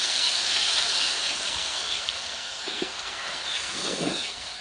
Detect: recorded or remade remade